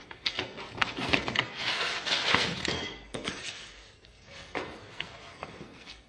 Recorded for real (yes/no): no